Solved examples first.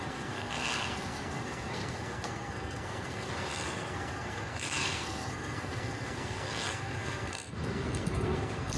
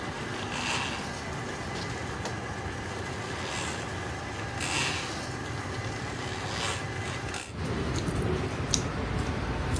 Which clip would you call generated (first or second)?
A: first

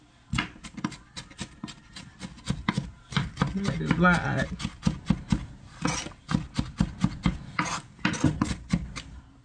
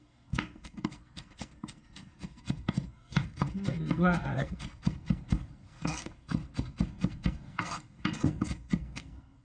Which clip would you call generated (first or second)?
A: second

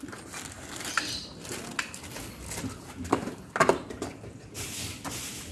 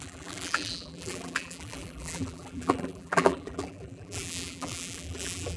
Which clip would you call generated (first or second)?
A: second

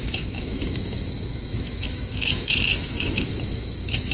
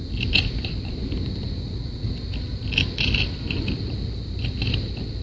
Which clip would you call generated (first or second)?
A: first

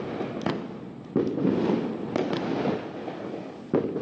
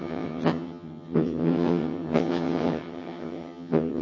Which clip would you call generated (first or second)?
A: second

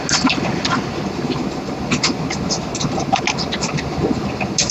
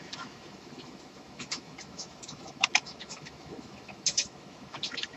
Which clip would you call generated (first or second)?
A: second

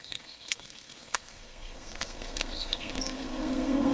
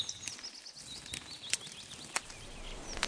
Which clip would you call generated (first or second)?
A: first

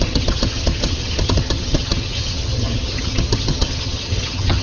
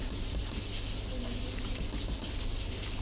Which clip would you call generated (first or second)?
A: first